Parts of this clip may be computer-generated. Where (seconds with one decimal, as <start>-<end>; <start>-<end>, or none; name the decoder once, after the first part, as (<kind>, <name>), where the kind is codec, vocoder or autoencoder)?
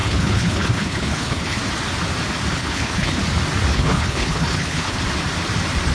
0.0-1.6 (codec, HILCodec); 2.6-3.2; 3.7-5.0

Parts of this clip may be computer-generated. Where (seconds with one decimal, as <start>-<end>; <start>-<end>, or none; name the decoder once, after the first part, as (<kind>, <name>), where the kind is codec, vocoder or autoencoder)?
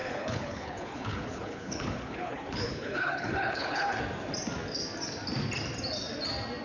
0.0-4.0 (codec, HILCodec)